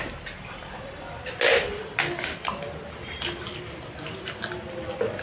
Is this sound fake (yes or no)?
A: no